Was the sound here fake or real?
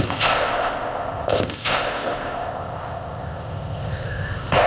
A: fake